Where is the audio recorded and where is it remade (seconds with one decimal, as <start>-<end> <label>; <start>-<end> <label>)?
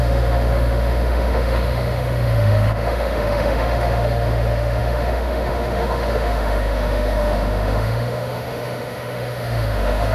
0.0-10.1 remade